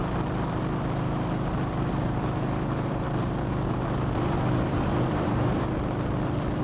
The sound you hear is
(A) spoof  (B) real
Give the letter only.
A